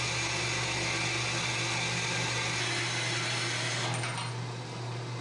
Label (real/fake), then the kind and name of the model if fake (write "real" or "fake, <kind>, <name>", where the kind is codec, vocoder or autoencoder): real